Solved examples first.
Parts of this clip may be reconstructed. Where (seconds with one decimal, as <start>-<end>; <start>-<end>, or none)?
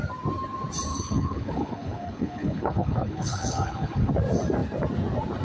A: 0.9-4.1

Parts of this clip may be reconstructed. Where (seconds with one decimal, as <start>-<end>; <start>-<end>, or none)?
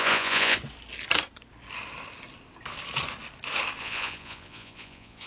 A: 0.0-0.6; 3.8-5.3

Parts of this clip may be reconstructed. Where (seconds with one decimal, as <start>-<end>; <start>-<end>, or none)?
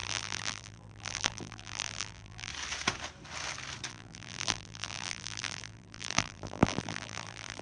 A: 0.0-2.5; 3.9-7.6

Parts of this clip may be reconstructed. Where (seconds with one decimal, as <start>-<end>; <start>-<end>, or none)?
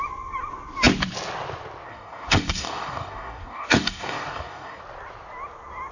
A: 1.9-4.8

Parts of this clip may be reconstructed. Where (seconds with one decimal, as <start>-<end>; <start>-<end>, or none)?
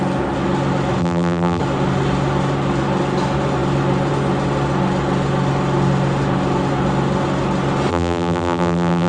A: 1.0-1.6; 7.9-9.1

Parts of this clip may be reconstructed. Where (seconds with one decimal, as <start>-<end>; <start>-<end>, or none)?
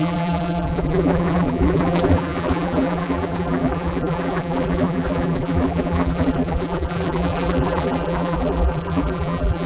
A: 0.0-9.7